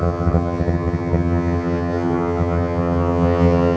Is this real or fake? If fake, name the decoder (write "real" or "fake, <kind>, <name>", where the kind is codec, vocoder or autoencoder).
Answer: fake, vocoder, HiFi-GAN